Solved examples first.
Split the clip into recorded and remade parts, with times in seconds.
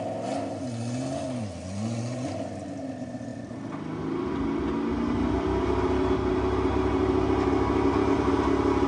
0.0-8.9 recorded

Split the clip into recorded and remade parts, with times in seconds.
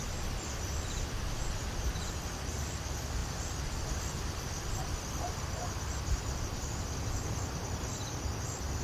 0.0-8.8 remade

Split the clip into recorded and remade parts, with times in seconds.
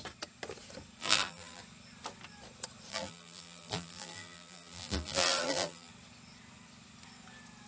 0.0-1.0 recorded; 1.0-1.6 remade; 1.6-2.9 recorded; 2.9-5.9 remade; 5.9-7.7 recorded